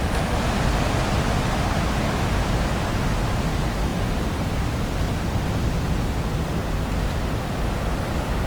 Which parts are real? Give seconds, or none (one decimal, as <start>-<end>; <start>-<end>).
0.0-3.9; 5.6-8.5